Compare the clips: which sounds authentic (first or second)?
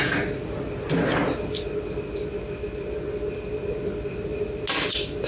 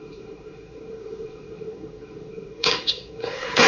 first